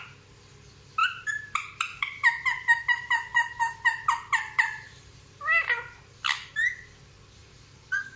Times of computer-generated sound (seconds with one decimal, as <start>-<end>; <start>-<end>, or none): 1.0-5.4; 7.4-8.2